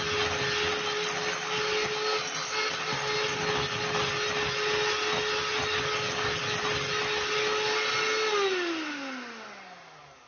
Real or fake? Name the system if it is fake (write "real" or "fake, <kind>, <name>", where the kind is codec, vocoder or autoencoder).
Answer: real